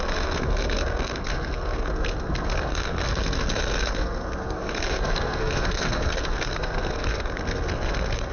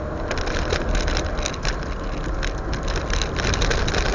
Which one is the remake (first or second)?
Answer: first